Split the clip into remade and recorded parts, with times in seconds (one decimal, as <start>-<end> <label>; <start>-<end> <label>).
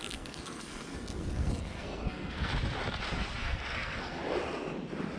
0.0-2.5 remade; 2.5-3.4 recorded; 3.4-4.2 remade; 4.2-5.2 recorded